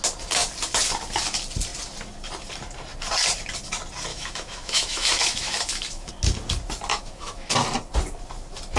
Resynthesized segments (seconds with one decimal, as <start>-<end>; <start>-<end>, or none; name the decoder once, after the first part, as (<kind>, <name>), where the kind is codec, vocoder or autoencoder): 4.1-6.1 (autoencoder, DAC-VAE); 6.9-7.5